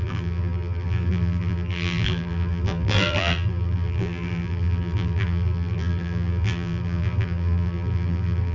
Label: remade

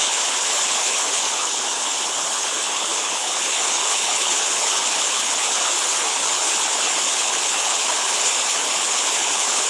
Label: remade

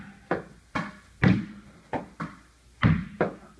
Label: recorded